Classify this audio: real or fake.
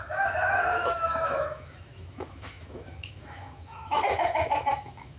fake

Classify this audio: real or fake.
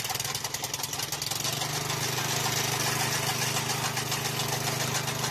real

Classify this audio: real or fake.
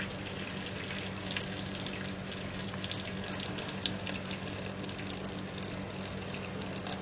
real